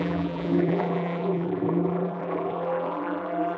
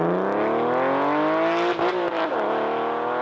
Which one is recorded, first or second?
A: second